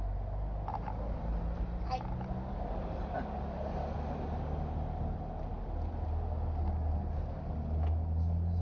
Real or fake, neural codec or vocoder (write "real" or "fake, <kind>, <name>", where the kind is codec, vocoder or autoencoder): real